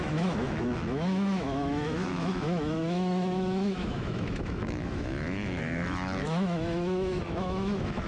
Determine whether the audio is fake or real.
fake